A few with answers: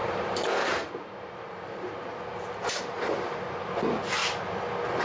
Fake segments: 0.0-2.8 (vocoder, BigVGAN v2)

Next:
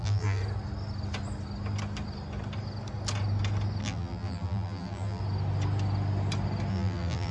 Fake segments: 0.0-0.4 (vocoder, BigVGAN v2); 3.8-5.2; 6.7-7.3

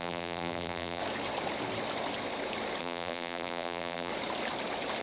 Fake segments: 0.0-1.0 (vocoder, BigVGAN v2); 2.8-4.1

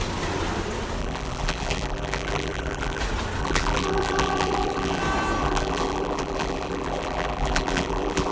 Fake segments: 1.0-3.0 (vocoder, BigVGAN v2); 3.4-5.0; 5.4-8.3

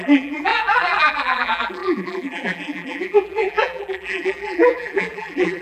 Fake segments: 0.0-5.6 (vocoder, BigVGAN v2)

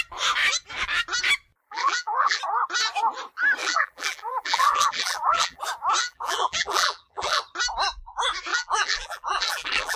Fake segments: 1.6-2.4 (vocoder, BigVGAN v2); 3.6-5.6; 6.0-7.4; 8.5-10.0

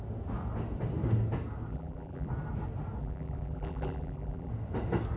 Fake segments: 1.7-2.3 (vocoder, BigVGAN v2); 3.0-4.5

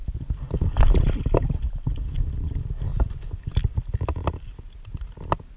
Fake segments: none